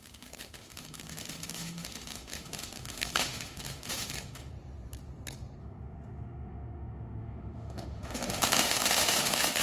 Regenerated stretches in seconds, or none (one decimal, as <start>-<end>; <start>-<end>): 0.0-4.5; 5.6-9.6